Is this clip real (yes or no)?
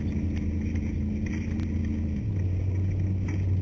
yes